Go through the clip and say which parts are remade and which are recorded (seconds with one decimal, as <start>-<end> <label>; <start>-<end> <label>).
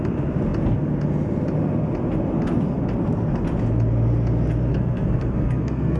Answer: 0.0-4.7 recorded; 4.7-6.0 remade